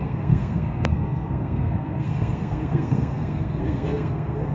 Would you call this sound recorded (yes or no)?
no